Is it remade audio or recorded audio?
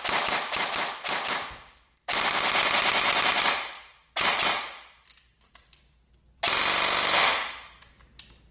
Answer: recorded